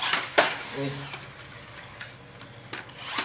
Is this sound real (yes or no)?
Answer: yes